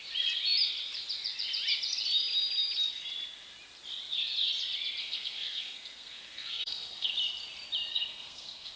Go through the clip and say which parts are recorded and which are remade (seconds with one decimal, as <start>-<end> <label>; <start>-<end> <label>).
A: 0.0-5.0 recorded; 5.0-7.1 remade; 7.1-7.9 recorded; 7.9-8.8 remade